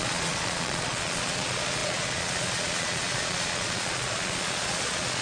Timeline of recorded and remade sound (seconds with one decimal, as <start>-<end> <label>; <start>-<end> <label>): 0.0-5.2 remade